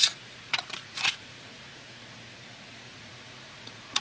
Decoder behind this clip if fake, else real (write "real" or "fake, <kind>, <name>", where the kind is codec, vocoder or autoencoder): fake, vocoder, Vocos